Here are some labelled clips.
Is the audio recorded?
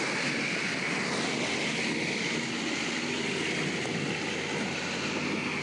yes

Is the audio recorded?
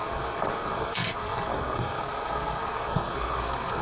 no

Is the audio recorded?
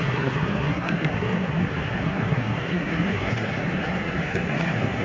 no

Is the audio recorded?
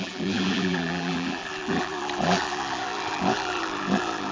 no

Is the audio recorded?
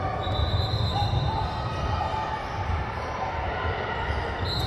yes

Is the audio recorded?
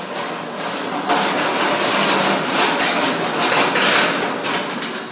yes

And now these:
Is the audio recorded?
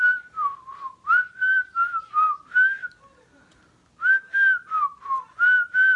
yes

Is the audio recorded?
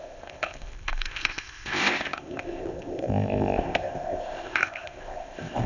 no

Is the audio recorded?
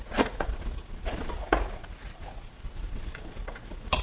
no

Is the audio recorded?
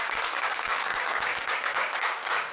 no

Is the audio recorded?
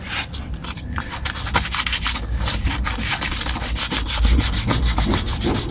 yes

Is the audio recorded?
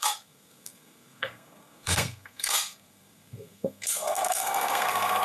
no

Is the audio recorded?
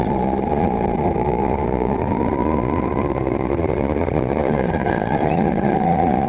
no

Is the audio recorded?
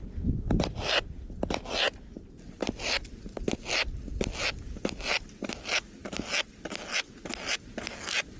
yes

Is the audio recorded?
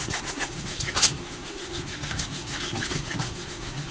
no